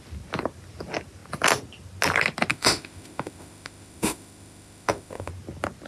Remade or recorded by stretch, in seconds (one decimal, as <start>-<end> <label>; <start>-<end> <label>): 0.0-2.5 recorded; 2.5-5.3 remade; 5.3-5.9 recorded